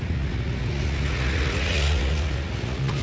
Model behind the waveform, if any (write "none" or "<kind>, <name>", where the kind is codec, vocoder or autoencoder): vocoder, Vocos